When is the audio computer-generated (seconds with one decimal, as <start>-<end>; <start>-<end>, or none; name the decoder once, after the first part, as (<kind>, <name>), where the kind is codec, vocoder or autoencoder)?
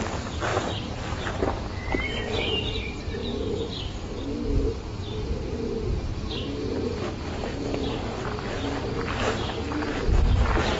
0.5-1.4 (vocoder, BigVGAN v2); 3.2-3.8; 5.9-9.5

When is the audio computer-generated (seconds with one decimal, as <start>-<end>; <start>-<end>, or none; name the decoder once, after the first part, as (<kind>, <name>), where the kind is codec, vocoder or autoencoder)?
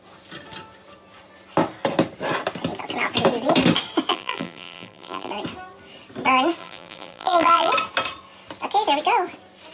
4.1-5.3 (vocoder, BigVGAN v2); 6.6-7.7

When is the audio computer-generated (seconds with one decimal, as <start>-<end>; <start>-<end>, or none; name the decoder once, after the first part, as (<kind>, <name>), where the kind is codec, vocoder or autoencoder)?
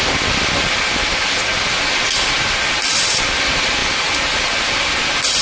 3.8-4.7 (vocoder, BigVGAN v2)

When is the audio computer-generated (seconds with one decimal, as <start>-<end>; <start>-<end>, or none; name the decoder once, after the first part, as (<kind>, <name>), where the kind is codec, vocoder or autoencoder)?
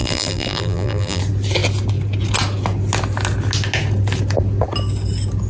0.0-1.2 (vocoder, BigVGAN v2)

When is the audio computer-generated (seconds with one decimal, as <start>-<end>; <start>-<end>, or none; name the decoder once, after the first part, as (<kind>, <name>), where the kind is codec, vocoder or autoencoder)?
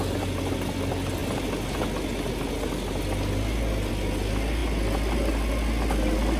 none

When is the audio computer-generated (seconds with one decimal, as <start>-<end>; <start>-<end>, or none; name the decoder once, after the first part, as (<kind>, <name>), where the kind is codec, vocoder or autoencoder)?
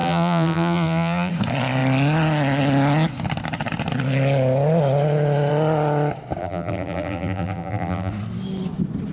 0.0-1.3 (vocoder, BigVGAN v2); 6.4-8.1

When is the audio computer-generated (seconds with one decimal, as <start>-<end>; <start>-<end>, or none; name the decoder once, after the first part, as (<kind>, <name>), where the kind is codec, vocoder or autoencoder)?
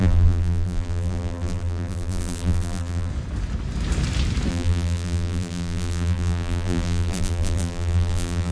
0.0-3.1 (vocoder, BigVGAN v2); 4.5-8.5